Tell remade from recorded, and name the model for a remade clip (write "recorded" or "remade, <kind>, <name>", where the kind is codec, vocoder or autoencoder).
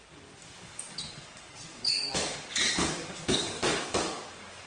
remade, codec, DAC